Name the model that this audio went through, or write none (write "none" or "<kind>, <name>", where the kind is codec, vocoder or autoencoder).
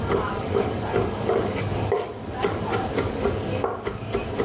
codec, DAC